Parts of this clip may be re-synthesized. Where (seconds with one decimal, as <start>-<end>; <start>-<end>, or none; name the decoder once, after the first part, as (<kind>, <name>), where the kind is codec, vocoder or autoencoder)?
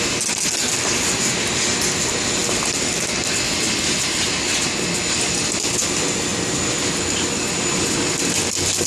none